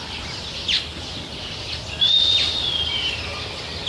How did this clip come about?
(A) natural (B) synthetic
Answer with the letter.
A